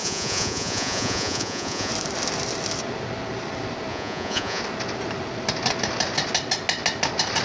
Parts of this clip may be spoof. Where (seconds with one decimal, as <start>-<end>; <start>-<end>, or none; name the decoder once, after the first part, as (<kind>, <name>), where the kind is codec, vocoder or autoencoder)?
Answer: 0.0-1.9 (vocoder, Vocos); 3.9-4.6